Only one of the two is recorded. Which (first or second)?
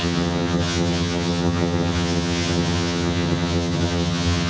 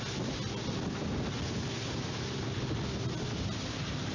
second